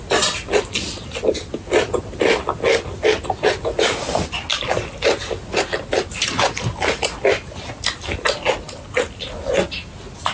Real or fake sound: real